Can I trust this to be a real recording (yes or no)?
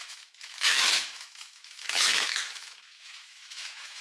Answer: no